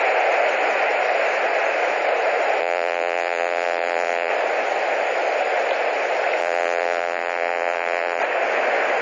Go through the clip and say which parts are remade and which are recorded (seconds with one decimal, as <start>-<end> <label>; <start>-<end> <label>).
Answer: 0.0-2.6 recorded; 2.6-4.3 remade; 4.3-6.4 recorded; 6.4-8.2 remade; 8.2-9.0 recorded